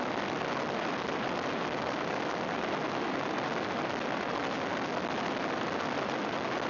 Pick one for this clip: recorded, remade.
recorded